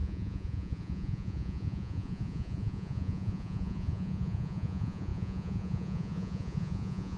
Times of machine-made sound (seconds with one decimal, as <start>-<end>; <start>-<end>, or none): 0.0-7.2